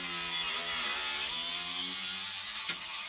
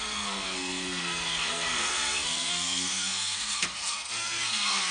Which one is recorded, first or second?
first